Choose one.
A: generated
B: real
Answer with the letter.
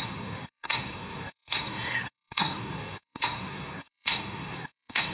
A